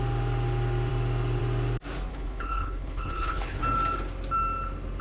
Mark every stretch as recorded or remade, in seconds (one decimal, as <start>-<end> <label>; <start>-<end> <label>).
0.0-2.1 recorded; 2.1-3.6 remade; 3.6-5.0 recorded